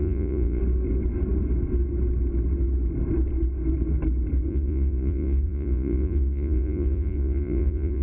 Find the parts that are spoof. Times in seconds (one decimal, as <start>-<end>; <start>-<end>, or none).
0.0-0.6; 4.5-8.0